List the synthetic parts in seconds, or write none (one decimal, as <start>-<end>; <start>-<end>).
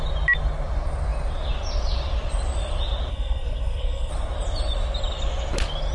3.1-4.1